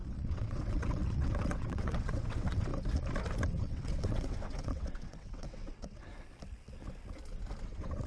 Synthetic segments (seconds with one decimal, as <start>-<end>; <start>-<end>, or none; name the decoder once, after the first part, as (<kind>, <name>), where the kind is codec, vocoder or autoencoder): 0.0-2.7 (vocoder, WaveNeXt); 3.6-6.1; 7.6-8.1